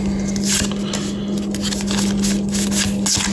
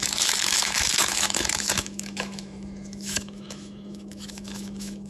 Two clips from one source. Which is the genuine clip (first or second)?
first